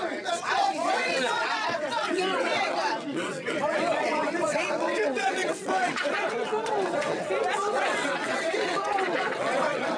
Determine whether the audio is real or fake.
fake